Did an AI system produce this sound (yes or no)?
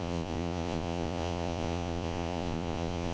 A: yes